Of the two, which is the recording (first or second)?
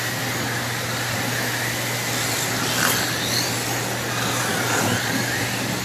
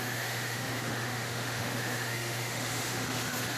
first